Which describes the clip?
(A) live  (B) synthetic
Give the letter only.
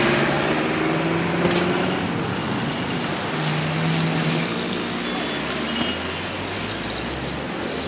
A